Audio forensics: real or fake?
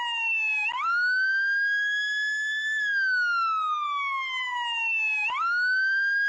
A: real